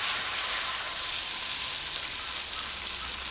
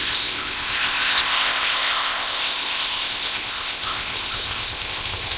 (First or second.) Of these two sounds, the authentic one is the first